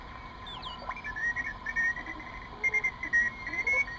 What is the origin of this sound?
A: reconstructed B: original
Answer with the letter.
B